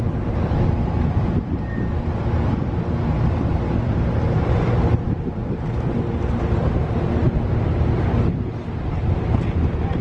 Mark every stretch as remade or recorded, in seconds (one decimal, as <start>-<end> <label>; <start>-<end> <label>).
0.0-10.0 recorded